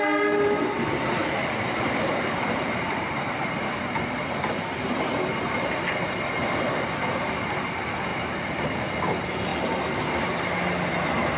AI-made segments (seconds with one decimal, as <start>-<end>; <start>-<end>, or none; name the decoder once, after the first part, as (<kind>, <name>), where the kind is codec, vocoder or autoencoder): 1.2-6.2 (vocoder, BigVGAN v2); 8.1-8.7